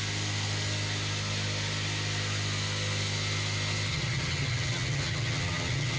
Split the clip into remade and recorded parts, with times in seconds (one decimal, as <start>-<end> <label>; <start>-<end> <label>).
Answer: 0.0-3.9 recorded; 3.9-6.0 remade